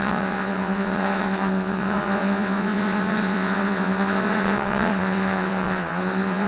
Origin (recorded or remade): remade